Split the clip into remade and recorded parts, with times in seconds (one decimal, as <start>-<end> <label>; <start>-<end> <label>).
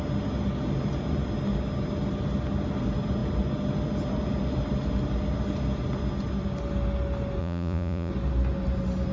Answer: 0.0-7.4 recorded; 7.4-8.1 remade; 8.1-9.1 recorded